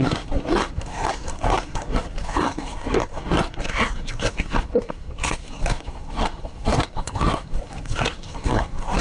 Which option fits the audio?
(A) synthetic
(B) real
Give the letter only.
A